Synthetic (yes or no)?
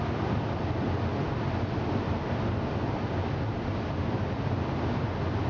no